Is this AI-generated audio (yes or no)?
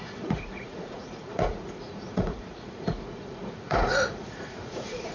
yes